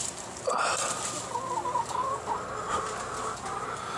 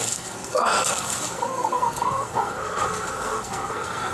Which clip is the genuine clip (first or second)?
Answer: first